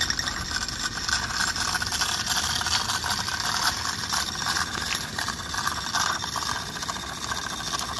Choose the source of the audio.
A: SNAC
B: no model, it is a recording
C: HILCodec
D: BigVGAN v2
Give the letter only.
B